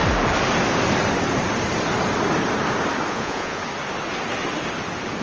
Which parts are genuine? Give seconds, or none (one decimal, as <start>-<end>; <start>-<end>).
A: 0.0-3.1; 3.6-5.2